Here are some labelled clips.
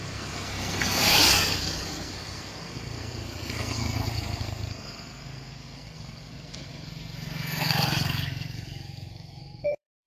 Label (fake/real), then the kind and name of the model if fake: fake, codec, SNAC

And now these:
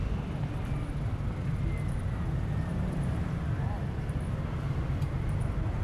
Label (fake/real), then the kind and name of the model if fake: real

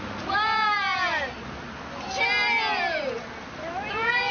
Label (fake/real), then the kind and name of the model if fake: real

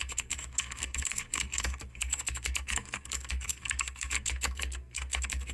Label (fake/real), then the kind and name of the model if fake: fake, codec, SNAC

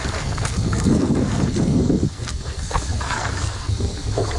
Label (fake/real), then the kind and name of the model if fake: fake, codec, SNAC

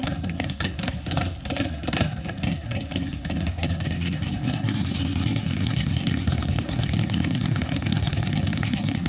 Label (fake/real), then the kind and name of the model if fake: fake, codec, SNAC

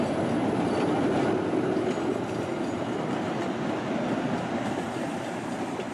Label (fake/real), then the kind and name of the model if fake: real